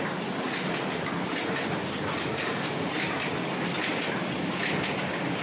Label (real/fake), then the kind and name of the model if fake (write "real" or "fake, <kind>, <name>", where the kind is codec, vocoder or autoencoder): real